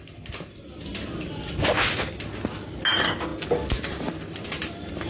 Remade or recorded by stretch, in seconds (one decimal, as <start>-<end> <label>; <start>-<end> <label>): 0.0-5.1 recorded